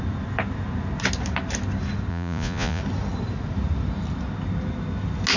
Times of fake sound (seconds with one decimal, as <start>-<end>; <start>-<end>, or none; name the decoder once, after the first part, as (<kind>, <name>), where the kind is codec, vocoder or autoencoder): 2.1-2.8 (vocoder, Vocos)